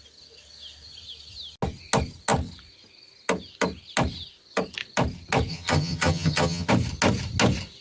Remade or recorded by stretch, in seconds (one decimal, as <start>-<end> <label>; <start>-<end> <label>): 0.0-5.5 recorded; 5.5-6.7 remade; 6.7-7.8 recorded